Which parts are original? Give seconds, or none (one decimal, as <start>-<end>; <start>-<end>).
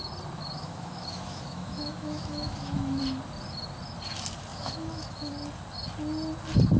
0.0-0.6; 3.0-4.5; 5.3-6.8